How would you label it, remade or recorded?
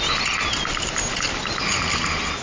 recorded